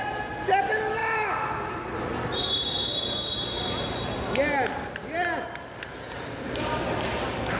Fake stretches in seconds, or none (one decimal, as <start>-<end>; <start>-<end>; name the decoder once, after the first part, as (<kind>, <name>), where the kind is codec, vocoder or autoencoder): none